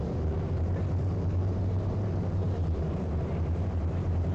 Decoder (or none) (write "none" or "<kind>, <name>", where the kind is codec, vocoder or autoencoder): vocoder, BigVGAN v2